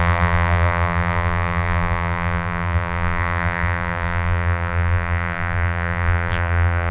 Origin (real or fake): fake